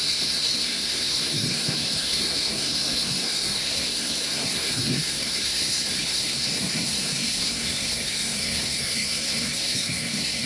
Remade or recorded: remade